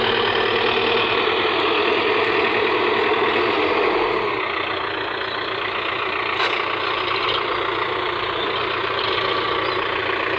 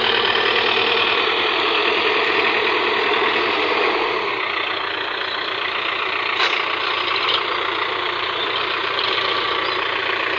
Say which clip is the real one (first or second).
first